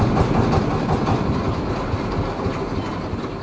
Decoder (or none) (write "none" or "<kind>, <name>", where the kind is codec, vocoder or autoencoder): none